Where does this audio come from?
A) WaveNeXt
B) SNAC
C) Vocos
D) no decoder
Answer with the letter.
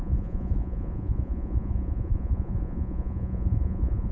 C